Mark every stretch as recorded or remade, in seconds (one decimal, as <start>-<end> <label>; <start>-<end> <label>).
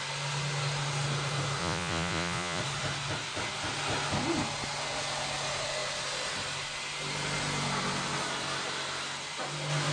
0.0-1.6 recorded; 1.6-2.6 remade; 2.6-9.9 recorded